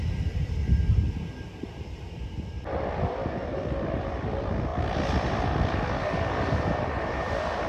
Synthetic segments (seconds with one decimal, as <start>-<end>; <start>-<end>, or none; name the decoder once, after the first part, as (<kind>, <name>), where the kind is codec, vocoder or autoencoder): 0.0-3.4 (vocoder, BigVGAN v2); 4.0-4.7; 6.8-7.7